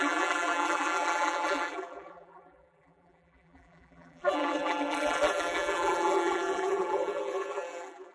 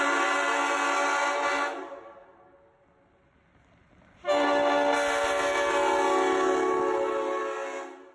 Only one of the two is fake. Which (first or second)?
first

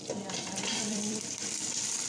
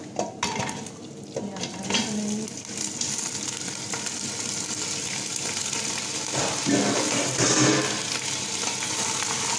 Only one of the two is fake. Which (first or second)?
first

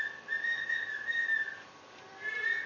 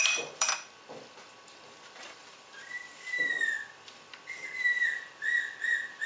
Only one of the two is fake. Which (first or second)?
second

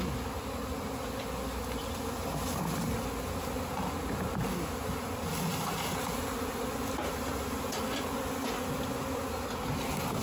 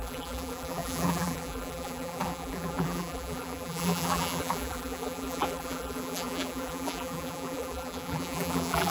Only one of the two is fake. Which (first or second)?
second